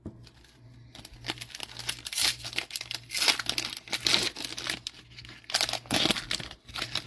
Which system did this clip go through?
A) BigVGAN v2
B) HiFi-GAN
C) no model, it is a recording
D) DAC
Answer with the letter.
C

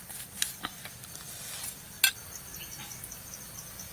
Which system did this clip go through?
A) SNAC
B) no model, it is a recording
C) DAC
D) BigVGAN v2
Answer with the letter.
B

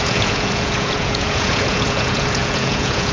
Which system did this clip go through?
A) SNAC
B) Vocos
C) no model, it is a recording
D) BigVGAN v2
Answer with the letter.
B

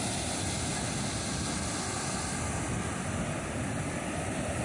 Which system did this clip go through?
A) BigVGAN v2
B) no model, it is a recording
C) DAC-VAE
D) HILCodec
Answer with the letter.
B